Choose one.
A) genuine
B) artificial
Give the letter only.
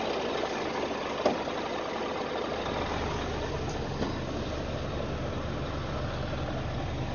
A